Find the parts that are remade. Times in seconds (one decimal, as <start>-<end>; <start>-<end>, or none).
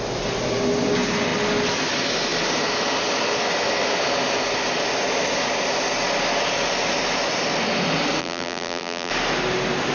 8.2-9.1